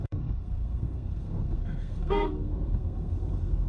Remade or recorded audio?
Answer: remade